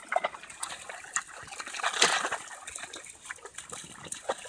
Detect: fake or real real